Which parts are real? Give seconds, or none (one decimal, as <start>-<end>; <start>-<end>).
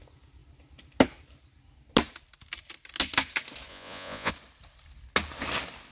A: 0.0-3.7; 4.3-5.9